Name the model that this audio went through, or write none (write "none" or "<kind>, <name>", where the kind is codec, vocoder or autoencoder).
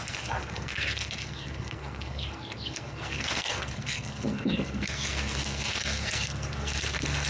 codec, SNAC